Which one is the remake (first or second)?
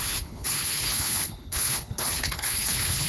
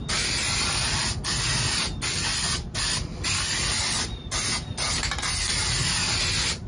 first